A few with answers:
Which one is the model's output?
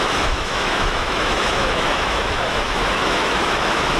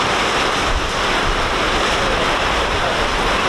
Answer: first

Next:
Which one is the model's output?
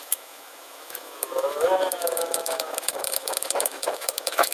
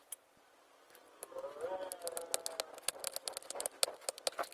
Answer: first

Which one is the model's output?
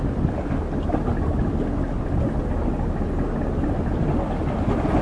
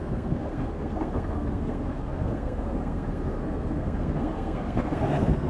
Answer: second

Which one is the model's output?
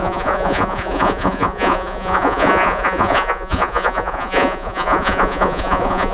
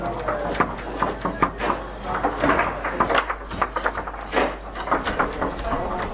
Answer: first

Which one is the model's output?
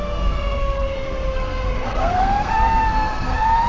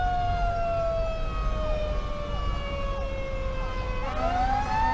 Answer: first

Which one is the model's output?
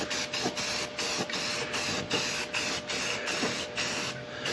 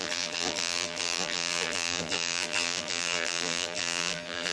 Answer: second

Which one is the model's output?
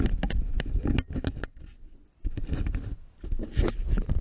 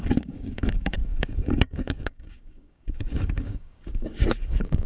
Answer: second